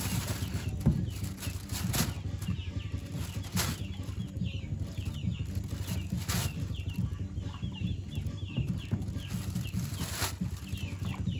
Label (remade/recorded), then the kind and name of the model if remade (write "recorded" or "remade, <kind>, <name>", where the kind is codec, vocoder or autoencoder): recorded